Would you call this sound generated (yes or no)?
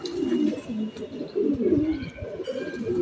no